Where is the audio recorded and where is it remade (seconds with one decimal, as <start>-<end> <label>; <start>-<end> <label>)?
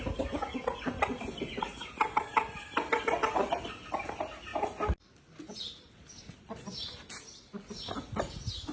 0.0-8.7 recorded